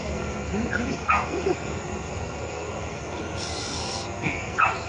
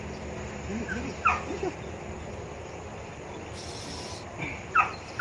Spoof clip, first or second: first